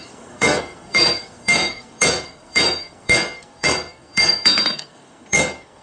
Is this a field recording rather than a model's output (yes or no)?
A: no